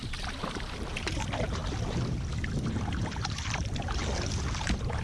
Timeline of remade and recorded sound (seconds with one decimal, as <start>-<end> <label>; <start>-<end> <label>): 0.0-0.9 recorded; 0.9-1.6 remade; 1.6-2.7 recorded; 2.7-4.0 remade; 4.0-4.6 recorded; 4.6-5.0 remade

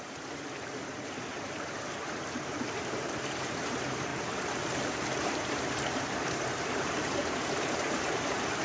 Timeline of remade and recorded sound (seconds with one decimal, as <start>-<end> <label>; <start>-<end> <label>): 0.0-4.1 remade; 4.1-5.2 recorded; 5.2-8.6 remade

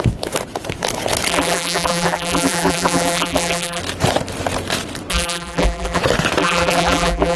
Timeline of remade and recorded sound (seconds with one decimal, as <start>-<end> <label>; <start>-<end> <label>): 0.0-1.3 recorded; 1.3-3.8 remade; 3.8-5.1 recorded; 5.1-6.0 remade; 6.0-6.4 recorded; 6.4-7.4 remade

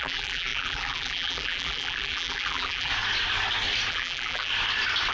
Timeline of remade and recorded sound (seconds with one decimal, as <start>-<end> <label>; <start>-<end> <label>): 0.0-2.9 remade; 2.9-3.9 recorded; 3.9-4.5 remade; 4.5-5.1 recorded